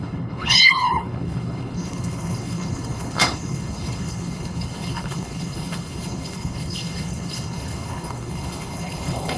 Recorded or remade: remade